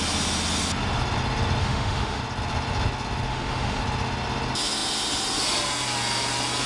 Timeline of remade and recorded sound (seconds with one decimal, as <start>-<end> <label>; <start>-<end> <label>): 0.0-1.6 recorded; 1.6-2.2 remade; 2.2-3.3 recorded; 3.3-3.8 remade; 3.8-6.7 recorded